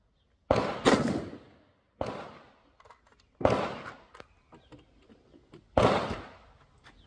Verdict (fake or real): real